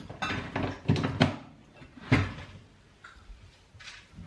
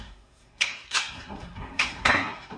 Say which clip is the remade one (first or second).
second